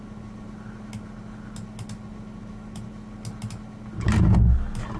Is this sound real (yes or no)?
yes